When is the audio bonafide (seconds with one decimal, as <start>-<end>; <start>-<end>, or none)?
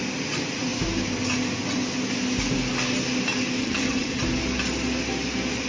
0.0-3.6; 4.2-5.7